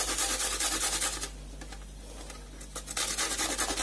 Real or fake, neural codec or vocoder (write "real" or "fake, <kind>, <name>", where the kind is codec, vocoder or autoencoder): real